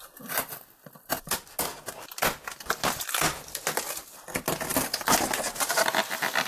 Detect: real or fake real